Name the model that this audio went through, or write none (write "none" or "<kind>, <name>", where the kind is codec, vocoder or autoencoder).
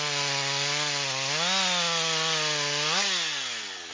none